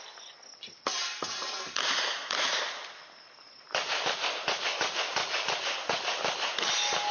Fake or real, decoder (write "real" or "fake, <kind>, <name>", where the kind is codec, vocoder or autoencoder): real